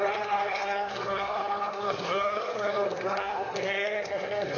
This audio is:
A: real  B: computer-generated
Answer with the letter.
B